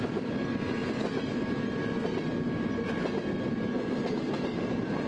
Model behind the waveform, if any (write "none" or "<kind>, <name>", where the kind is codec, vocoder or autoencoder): none